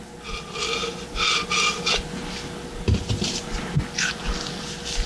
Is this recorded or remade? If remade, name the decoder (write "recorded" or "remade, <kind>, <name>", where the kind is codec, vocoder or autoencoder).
recorded